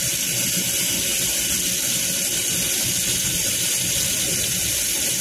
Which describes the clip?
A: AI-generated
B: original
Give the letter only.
B